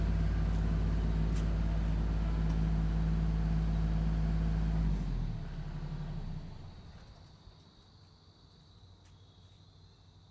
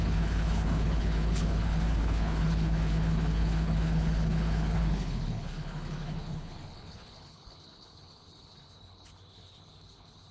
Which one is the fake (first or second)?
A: second